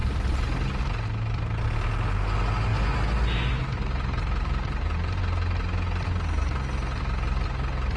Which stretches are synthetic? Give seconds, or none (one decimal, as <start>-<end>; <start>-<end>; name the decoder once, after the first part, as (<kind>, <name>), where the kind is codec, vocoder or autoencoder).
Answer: 2.7-5.2 (vocoder, BigVGAN v2)